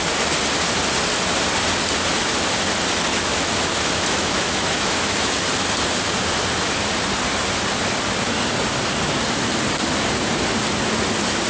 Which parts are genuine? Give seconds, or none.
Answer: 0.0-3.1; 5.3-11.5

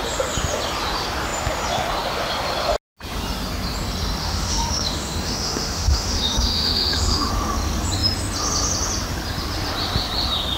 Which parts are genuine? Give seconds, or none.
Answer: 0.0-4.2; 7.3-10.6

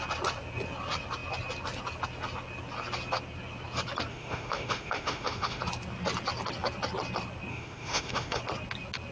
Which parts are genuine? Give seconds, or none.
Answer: 0.0-4.1; 5.6-7.5; 8.4-9.1

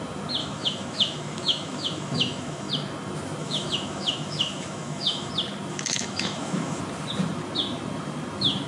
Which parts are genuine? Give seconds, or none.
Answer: 0.0-0.4; 2.7-3.4; 5.3-5.7; 6.8-8.7

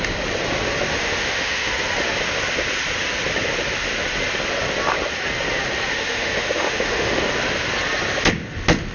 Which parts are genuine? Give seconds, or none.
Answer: 0.0-0.9; 1.7-5.9; 7.2-8.9

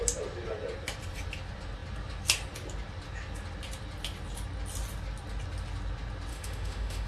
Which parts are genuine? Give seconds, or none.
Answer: 0.0-6.3

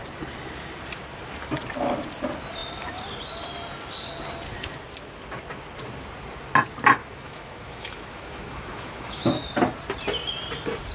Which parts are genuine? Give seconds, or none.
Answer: 0.0-7.0; 9.3-10.9

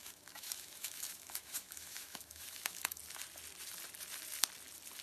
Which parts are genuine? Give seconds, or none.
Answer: 3.0-5.0